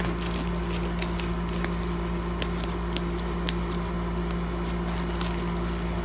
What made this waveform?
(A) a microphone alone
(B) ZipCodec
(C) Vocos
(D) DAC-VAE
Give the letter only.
A